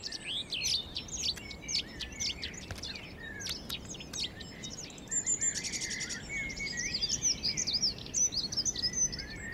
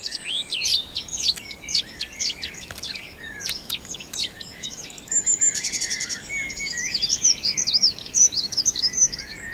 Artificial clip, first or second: second